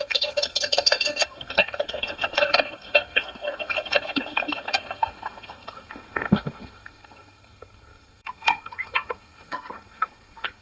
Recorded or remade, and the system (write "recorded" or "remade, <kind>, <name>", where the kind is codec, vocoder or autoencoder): remade, codec, SNAC